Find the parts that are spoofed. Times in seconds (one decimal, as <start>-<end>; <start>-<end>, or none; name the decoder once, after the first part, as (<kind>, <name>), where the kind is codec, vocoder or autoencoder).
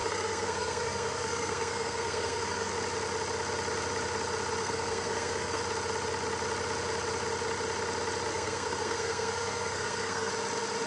0.0-2.7 (codec, SNAC); 4.6-5.6; 8.3-10.3